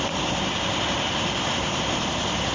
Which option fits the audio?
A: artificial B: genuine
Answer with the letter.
B